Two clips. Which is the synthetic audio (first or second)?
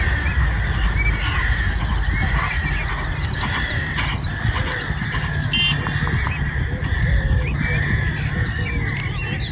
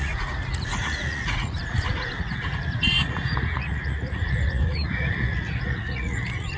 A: second